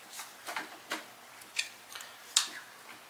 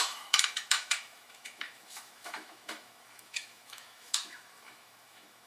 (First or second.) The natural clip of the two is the first